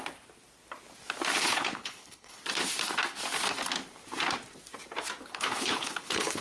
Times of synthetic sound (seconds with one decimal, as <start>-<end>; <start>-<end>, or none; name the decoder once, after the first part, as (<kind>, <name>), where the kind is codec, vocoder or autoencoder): 1.4-2.4 (codec, HILCodec); 5.3-6.4

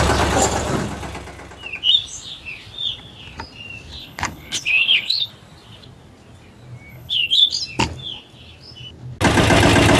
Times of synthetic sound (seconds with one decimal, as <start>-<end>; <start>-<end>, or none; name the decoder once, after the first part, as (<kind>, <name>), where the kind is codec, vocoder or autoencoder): 4.0-5.3 (codec, HILCodec); 6.9-7.5

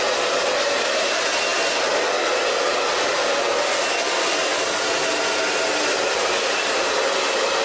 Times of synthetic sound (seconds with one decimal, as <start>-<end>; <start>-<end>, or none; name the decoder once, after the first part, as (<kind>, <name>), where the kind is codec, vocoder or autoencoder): none

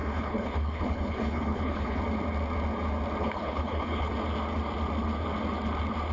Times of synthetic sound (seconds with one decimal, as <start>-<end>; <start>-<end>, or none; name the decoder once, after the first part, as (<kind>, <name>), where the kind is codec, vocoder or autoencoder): 0.0-2.0 (codec, HILCodec); 3.2-4.1

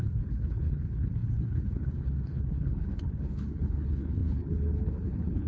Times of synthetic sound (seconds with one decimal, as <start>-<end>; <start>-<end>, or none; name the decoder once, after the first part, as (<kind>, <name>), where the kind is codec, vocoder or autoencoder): 0.0-5.5 (codec, HILCodec)